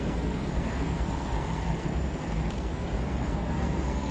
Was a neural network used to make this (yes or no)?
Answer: yes